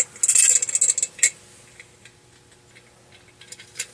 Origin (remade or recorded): recorded